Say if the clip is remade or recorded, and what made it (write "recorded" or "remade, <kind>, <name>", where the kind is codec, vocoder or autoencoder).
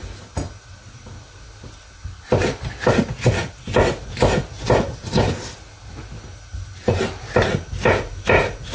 recorded